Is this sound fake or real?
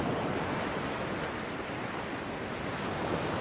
real